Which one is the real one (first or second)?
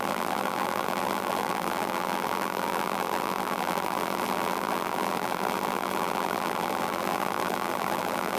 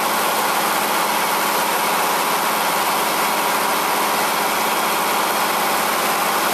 second